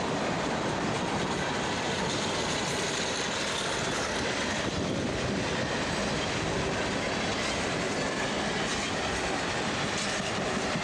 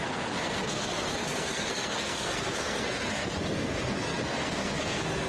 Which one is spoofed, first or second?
second